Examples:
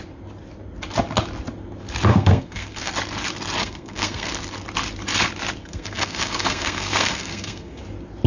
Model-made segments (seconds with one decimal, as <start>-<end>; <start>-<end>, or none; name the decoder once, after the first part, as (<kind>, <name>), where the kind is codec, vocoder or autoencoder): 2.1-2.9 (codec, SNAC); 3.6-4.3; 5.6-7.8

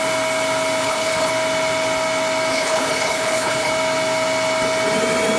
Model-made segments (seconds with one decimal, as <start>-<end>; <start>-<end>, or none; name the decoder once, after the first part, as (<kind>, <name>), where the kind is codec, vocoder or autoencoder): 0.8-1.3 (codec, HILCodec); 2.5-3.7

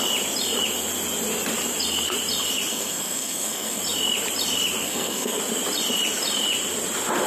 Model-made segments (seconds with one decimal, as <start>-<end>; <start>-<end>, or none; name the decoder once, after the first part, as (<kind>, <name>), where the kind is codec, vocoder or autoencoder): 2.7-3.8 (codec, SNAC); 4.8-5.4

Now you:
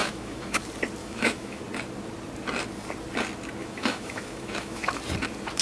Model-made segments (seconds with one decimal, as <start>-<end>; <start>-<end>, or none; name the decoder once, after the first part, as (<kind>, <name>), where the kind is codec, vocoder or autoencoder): 0.0-0.6 (autoencoder, DAC-VAE); 1.0-1.6; 3.6-5.0

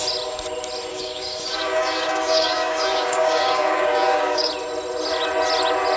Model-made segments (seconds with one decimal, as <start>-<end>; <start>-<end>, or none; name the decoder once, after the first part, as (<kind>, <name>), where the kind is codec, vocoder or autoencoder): 0.9-4.5 (codec, DAC)

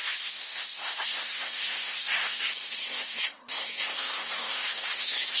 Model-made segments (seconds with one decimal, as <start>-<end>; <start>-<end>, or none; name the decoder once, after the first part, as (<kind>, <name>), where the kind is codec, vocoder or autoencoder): 0.0-5.4 (codec, SNAC)

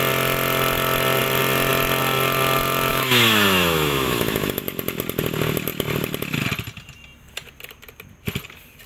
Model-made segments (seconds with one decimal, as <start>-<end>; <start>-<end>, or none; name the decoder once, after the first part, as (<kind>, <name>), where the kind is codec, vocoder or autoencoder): 2.9-4.6 (autoencoder, DAC-VAE)

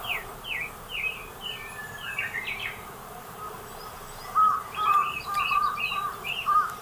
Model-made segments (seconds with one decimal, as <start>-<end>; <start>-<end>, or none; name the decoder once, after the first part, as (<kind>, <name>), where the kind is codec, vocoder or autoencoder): 0.0-6.8 (vocoder, BigVGAN v2)